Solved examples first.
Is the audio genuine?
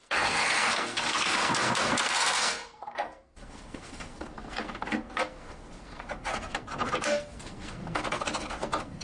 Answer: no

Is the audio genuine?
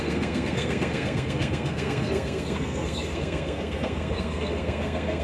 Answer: no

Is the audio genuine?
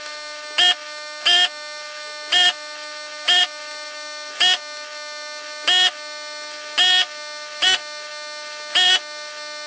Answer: yes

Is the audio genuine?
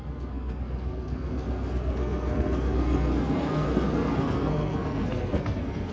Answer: no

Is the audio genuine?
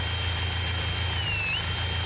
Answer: yes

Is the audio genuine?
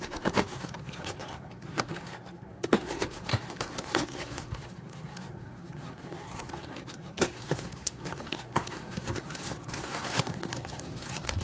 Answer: no